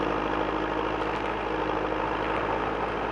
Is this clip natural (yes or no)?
yes